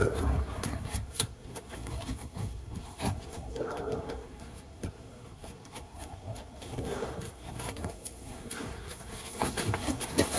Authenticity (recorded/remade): remade